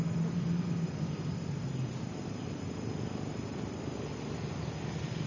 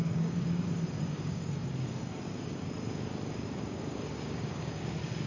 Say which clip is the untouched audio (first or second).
first